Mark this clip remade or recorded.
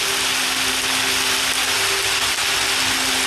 recorded